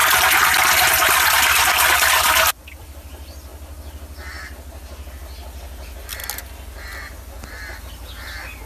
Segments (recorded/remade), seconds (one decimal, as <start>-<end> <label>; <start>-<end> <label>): 0.0-0.9 recorded; 0.9-3.5 remade; 3.5-5.1 recorded; 5.1-6.2 remade; 6.2-7.8 recorded; 7.8-8.7 remade